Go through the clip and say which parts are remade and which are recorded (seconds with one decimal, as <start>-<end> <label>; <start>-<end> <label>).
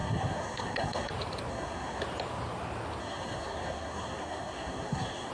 0.0-1.1 remade; 1.1-1.5 recorded; 1.5-2.0 remade; 2.0-3.0 recorded; 3.0-5.3 remade